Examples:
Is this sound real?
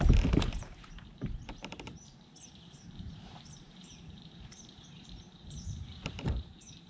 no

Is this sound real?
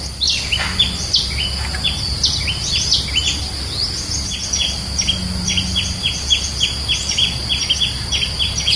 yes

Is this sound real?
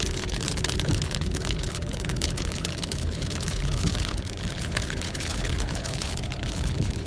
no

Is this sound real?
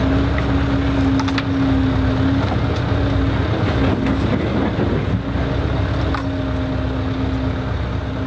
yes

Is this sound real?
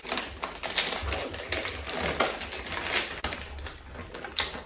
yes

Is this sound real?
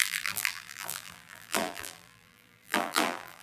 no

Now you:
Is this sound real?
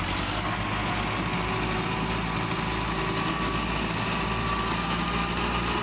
yes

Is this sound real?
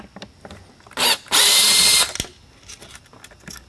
yes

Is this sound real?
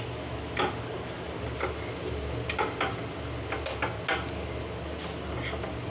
yes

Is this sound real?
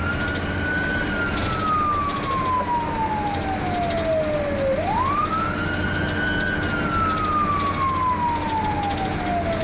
yes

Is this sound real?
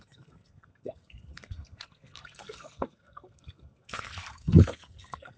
no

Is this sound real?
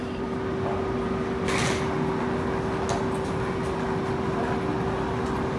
yes